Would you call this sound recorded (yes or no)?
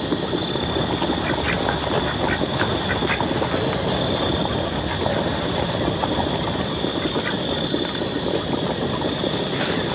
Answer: yes